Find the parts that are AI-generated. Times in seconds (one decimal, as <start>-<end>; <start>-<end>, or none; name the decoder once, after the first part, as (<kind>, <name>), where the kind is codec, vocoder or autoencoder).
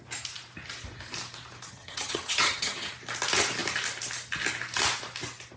1.7-2.9 (vocoder, HiFi-GAN)